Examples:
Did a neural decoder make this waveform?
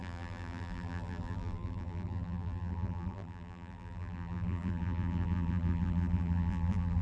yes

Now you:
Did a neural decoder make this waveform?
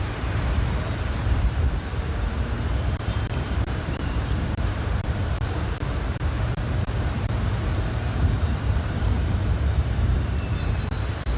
yes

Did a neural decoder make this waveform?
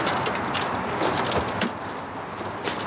no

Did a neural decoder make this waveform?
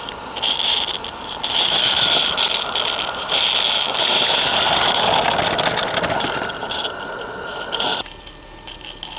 no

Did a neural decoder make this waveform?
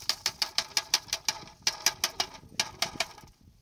no